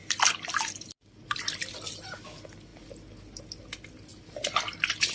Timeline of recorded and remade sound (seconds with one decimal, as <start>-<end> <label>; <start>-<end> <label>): 0.0-5.1 recorded